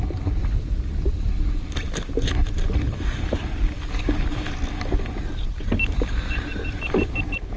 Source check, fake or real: real